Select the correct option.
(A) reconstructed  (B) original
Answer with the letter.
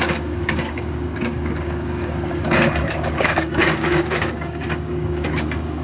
A